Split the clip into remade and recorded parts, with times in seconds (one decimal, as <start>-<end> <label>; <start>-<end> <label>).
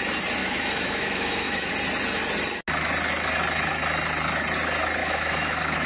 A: 0.0-0.4 recorded; 0.4-1.7 remade; 1.7-5.0 recorded; 5.0-5.9 remade